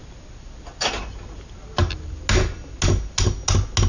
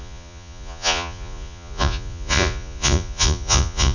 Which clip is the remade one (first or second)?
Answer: second